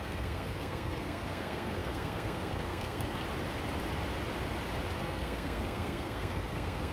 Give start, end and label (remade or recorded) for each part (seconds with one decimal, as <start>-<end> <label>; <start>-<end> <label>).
0.0-3.2 remade; 3.2-5.0 recorded; 5.0-6.9 remade